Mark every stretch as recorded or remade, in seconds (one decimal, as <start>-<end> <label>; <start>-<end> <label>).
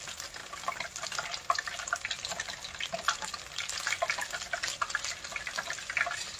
0.0-6.4 recorded